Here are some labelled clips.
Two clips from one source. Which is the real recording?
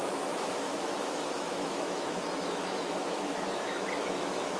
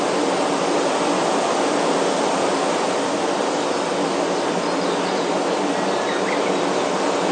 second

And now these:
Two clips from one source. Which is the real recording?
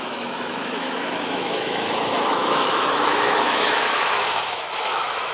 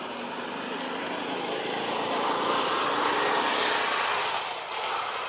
second